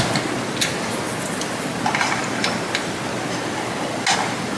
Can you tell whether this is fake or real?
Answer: real